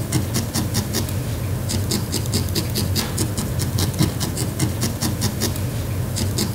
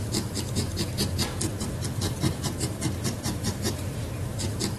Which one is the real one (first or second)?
first